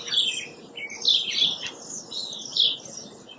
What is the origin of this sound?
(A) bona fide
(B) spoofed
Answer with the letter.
A